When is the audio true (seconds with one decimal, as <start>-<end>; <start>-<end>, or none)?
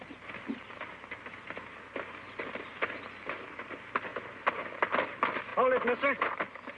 0.0-4.1; 4.8-6.8